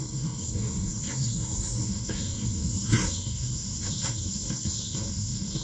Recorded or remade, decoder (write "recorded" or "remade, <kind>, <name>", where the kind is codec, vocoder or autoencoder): remade, codec, SNAC